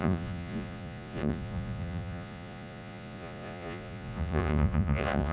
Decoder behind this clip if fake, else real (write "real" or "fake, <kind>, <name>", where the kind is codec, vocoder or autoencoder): fake, vocoder, Vocos